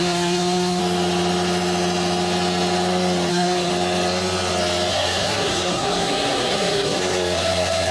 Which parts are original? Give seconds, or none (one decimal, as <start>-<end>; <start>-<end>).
0.8-3.3; 3.7-4.9